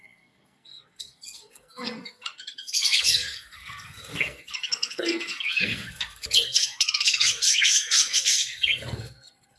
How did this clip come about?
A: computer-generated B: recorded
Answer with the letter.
A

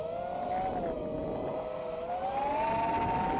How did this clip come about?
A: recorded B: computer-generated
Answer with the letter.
A